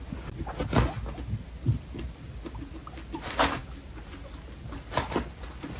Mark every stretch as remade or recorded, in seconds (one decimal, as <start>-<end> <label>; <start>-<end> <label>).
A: 0.0-5.8 recorded